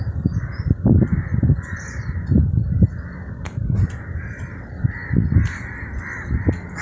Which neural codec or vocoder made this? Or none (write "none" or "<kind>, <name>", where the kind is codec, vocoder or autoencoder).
none